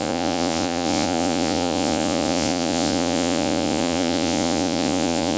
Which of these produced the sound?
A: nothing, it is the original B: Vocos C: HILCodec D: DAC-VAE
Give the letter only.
B